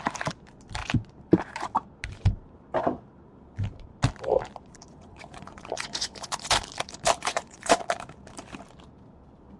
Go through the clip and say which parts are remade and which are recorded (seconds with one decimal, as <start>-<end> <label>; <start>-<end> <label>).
0.0-4.9 recorded; 4.9-6.5 remade; 6.5-7.2 recorded; 7.2-7.8 remade; 7.8-9.6 recorded

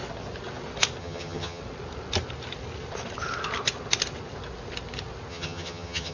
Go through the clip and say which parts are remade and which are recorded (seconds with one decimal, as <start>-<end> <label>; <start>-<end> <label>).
0.0-1.0 recorded; 1.0-1.6 remade; 1.6-5.3 recorded; 5.3-6.1 remade

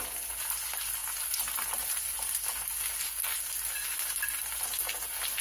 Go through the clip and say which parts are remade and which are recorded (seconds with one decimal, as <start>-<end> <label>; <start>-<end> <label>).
0.0-5.4 recorded

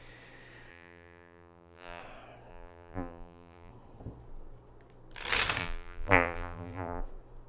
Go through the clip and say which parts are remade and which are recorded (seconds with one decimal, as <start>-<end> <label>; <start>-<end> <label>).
0.0-0.7 recorded; 0.7-2.0 remade; 2.0-2.5 recorded; 2.5-3.7 remade; 3.7-5.6 recorded; 5.6-7.0 remade; 7.0-7.5 recorded

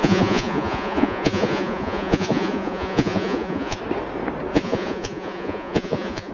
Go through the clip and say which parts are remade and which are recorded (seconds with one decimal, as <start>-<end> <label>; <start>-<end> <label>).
0.0-3.8 remade; 3.8-4.5 recorded; 4.5-6.3 remade

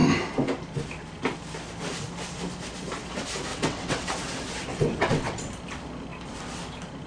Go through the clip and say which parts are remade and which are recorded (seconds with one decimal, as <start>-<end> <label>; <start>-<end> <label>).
0.0-3.5 recorded; 3.5-4.1 remade; 4.1-4.7 recorded; 4.7-5.5 remade; 5.5-7.1 recorded

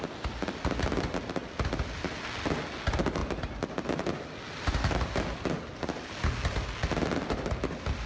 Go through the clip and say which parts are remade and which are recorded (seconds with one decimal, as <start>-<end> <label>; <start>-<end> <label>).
0.0-8.1 recorded